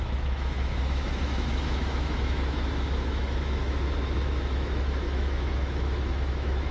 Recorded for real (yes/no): no